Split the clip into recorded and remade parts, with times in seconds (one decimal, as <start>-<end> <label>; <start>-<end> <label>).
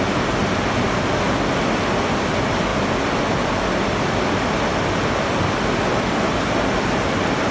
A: 0.0-7.5 recorded